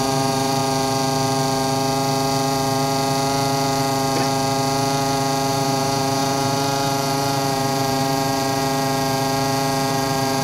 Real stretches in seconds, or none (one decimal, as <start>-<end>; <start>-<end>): 0.6-5.5; 8.6-9.9